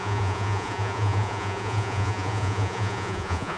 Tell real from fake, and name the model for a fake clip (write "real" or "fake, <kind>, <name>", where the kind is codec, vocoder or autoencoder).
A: fake, vocoder, Vocos